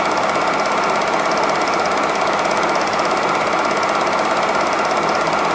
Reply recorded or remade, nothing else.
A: recorded